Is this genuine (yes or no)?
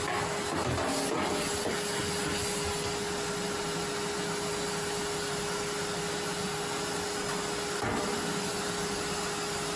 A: yes